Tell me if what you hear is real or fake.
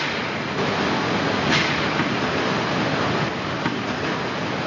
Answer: real